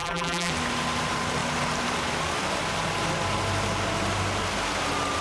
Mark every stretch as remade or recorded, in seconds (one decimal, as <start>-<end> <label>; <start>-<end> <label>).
0.0-0.5 remade; 0.5-5.2 recorded